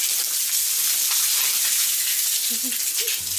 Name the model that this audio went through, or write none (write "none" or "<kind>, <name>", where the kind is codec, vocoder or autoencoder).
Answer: none